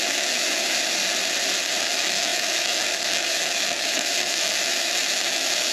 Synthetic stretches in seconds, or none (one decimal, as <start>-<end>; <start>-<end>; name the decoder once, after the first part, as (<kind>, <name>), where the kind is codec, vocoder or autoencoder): 0.0-1.0 (autoencoder, DAC-VAE); 1.8-5.7